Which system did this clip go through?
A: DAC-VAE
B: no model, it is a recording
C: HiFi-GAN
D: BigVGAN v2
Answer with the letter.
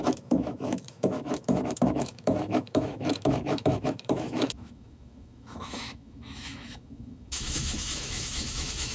A